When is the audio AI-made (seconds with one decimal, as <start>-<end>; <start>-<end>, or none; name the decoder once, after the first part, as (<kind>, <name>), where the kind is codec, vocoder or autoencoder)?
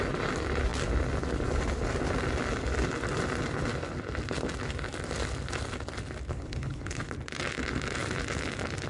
6.3-7.1 (codec, HILCodec)